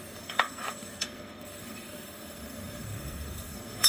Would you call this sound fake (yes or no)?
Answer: yes